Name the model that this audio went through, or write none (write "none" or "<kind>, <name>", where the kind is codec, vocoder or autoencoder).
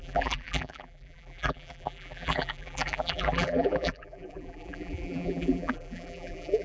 vocoder, BigVGAN v2